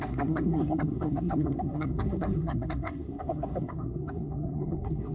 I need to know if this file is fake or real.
fake